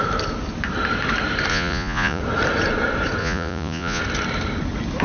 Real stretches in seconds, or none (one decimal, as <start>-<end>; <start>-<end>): 0.0-1.5; 2.2-3.2; 4.0-5.0